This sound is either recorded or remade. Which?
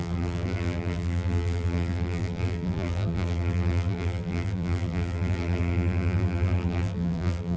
remade